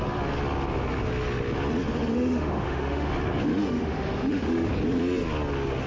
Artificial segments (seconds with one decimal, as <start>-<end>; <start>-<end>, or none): 2.1-3.1; 3.5-4.7